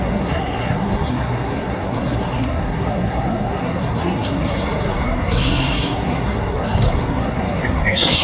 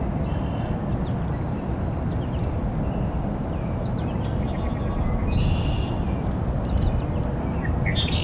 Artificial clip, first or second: first